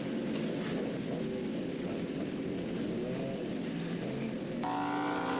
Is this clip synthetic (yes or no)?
no